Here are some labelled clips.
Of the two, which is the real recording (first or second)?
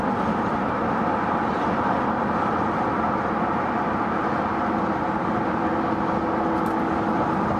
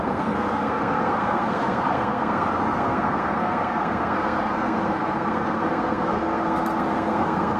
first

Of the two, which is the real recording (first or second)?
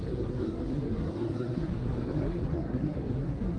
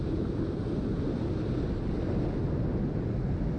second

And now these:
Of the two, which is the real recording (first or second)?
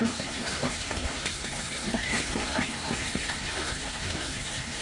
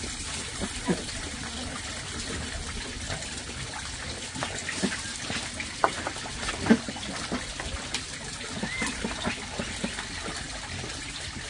second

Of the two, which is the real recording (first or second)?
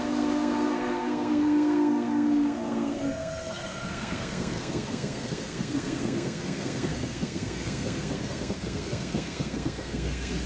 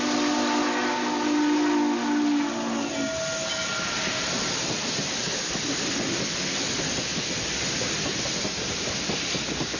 second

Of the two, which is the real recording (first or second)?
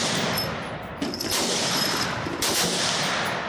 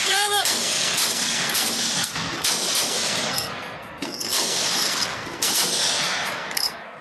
first